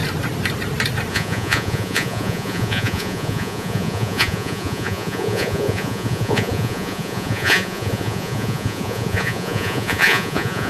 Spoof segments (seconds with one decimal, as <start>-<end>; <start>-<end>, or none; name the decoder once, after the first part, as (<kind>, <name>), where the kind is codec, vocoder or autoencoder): 1.1-10.7 (vocoder, Vocos)